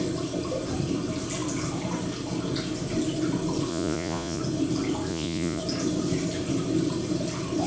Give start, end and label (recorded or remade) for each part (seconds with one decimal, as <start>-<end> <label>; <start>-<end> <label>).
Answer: 0.0-3.7 recorded; 3.7-4.4 remade; 4.4-5.1 recorded; 5.1-5.6 remade; 5.6-7.7 recorded